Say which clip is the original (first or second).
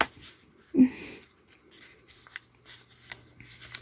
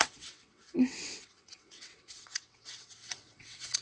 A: first